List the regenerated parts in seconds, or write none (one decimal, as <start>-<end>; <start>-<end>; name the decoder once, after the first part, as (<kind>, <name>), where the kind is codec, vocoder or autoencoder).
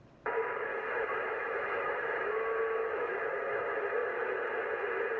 0.7-3.8 (autoencoder, DAC-VAE)